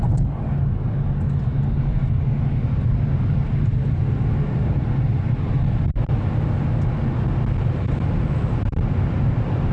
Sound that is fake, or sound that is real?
real